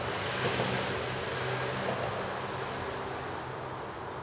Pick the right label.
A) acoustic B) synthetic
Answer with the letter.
A